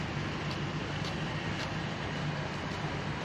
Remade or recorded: remade